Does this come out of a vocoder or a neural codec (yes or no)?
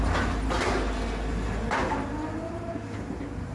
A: no